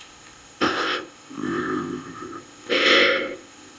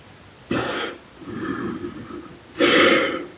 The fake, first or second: first